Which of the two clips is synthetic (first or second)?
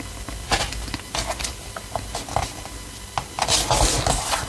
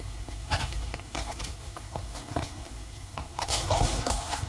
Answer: second